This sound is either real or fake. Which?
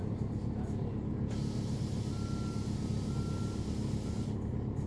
real